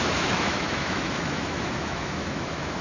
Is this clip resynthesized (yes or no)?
yes